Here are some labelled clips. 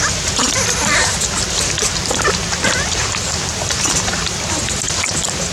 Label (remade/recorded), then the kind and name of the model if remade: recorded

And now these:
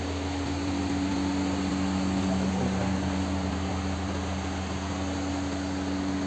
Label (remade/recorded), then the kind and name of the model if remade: recorded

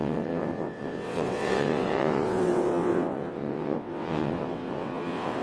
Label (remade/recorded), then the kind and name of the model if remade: remade, vocoder, WaveNeXt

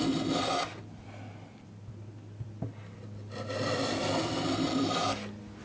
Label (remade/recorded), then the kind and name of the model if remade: recorded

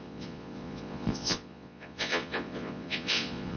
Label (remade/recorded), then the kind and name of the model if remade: remade, vocoder, Vocos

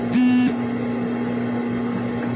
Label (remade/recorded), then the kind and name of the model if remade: recorded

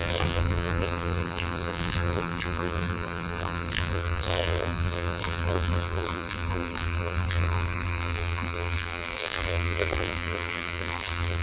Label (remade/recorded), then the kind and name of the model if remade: remade, vocoder, BigVGAN v2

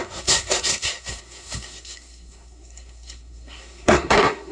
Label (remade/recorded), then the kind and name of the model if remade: remade, codec, SNAC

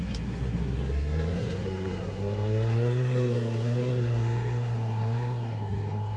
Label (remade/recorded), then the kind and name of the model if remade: remade, codec, SNAC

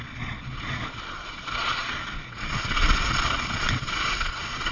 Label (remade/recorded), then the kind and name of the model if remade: remade, vocoder, Vocos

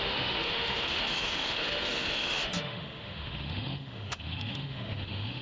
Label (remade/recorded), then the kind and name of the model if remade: remade, autoencoder, DAC-VAE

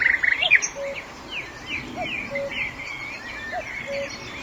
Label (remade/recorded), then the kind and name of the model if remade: recorded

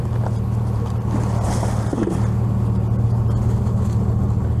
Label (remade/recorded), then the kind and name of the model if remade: recorded